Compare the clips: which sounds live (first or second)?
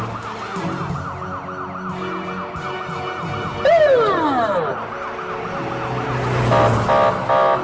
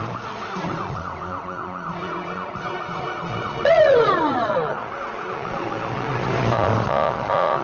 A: first